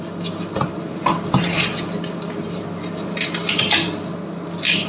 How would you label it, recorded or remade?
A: recorded